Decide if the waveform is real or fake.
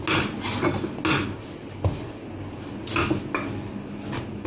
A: real